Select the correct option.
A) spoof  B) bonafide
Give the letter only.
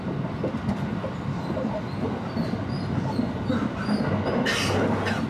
B